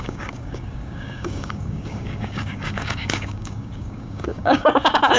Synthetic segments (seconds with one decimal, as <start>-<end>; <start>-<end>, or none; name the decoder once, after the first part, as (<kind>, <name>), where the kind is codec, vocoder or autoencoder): 0.0-5.2 (codec, DAC)